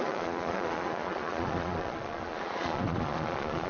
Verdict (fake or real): fake